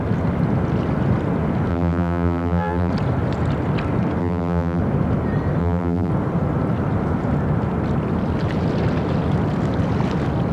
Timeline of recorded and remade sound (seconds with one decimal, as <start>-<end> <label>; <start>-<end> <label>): 0.0-1.7 recorded; 1.7-2.9 remade; 2.9-4.2 recorded; 4.2-4.8 remade; 4.8-5.6 recorded; 5.6-6.1 remade; 6.1-10.5 recorded